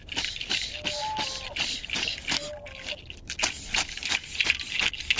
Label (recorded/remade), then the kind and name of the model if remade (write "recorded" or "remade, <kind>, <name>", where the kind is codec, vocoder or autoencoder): recorded